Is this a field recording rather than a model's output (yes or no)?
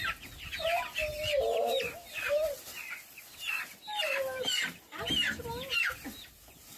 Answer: yes